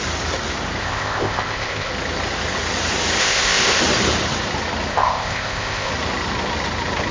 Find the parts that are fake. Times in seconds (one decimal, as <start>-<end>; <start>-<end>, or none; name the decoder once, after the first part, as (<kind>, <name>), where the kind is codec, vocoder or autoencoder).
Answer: 0.8-1.9 (codec, ZipCodec); 3.2-3.8; 4.9-5.9